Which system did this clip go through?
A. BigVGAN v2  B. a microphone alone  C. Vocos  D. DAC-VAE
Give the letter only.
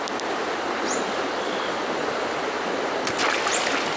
B